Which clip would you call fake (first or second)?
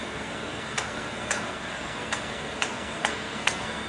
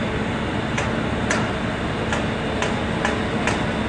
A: first